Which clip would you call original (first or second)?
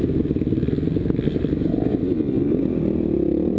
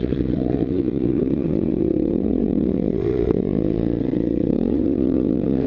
first